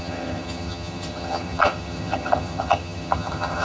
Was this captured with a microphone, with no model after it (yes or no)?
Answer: no